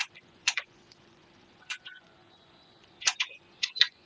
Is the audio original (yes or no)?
no